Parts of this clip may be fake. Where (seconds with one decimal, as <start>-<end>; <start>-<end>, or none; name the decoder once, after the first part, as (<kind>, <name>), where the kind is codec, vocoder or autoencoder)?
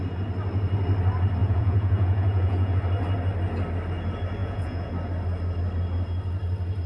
1.4-2.8 (vocoder, Vocos); 4.4-4.9